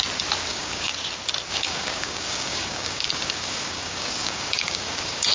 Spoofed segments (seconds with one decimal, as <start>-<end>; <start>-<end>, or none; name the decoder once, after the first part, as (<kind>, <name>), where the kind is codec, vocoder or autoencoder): 0.5-0.9 (codec, DAC); 1.5-5.3